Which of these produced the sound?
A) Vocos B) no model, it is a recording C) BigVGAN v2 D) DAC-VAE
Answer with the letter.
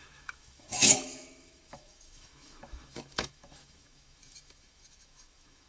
D